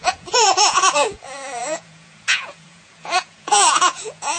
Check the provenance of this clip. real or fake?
fake